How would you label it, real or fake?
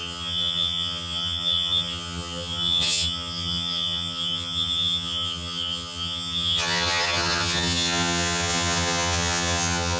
fake